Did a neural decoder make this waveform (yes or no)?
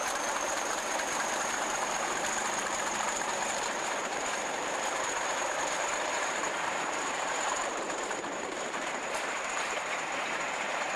yes